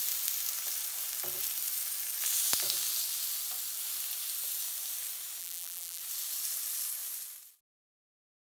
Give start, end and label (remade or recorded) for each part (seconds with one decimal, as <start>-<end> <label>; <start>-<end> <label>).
0.0-5.4 recorded; 5.4-6.0 remade; 6.0-8.5 recorded